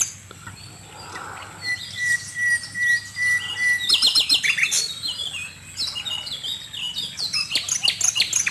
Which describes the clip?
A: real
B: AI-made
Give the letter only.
A